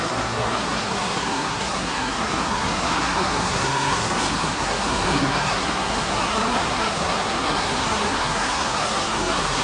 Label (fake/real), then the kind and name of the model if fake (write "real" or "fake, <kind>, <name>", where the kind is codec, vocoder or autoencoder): fake, codec, SNAC